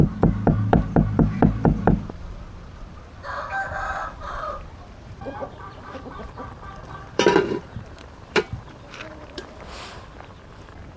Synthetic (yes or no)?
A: yes